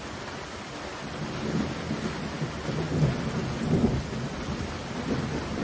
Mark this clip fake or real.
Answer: real